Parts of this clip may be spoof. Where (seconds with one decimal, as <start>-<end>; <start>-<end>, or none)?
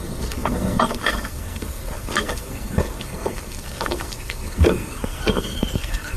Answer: 0.0-6.2